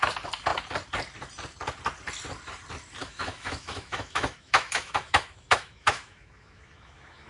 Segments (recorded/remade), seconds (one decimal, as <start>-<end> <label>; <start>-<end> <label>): 0.0-3.0 recorded; 3.0-7.3 remade